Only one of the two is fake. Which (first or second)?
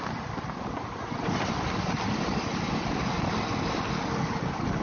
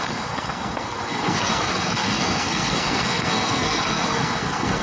second